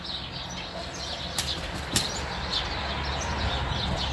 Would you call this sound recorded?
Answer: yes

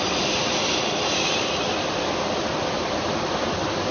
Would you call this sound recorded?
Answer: yes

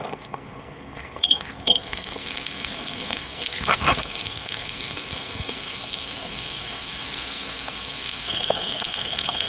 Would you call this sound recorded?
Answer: no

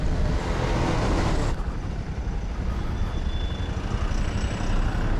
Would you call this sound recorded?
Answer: yes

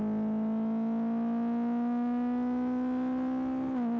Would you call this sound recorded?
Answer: yes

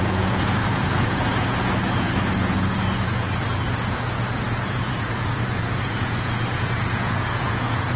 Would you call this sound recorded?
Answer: no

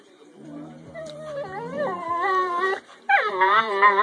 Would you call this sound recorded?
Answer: no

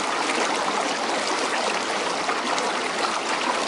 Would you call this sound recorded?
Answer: yes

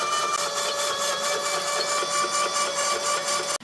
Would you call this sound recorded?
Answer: yes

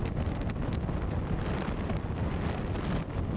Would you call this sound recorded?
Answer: yes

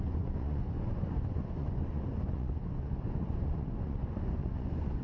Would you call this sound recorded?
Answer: no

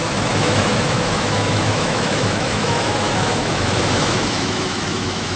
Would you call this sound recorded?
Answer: no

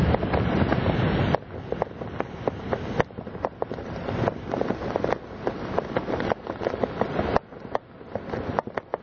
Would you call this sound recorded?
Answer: yes